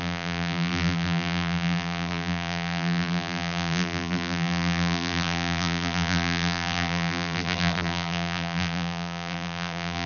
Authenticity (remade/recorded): remade